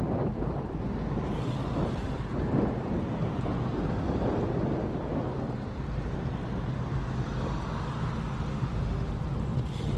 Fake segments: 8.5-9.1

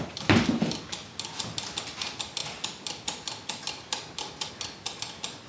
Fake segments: none

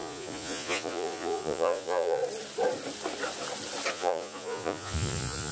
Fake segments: 0.0-2.2; 3.9-5.5